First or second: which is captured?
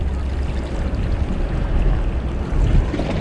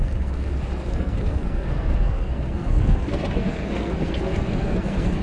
first